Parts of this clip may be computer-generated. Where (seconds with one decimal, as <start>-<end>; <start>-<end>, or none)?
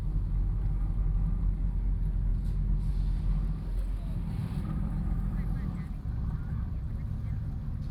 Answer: 4.4-7.4